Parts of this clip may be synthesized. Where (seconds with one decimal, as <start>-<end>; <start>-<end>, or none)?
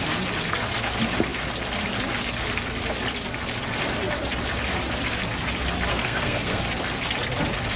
5.9-6.6